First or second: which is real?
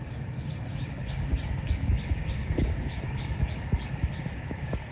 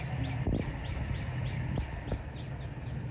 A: second